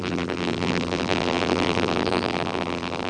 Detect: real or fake fake